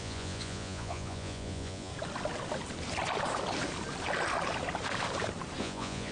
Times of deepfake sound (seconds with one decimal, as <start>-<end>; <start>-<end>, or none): 0.0-1.9; 5.6-6.1

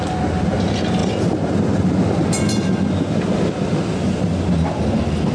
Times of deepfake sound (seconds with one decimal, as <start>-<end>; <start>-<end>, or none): none

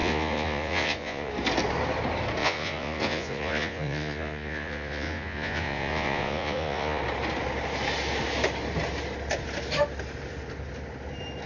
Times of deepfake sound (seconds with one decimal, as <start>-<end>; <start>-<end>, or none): 0.0-1.3; 2.4-7.0

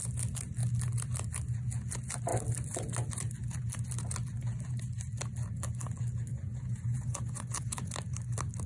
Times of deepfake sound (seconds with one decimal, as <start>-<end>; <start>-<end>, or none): 6.3-7.9

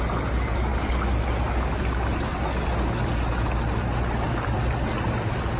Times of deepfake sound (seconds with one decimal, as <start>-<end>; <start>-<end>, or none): none

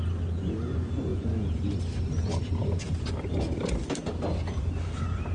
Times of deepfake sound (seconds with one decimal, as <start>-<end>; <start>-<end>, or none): 1.1-1.7

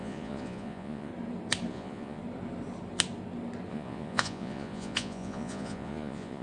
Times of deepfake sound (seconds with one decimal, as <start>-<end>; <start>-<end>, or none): 0.0-1.1; 1.7-2.2; 3.7-6.4